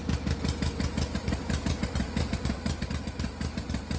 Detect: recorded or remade recorded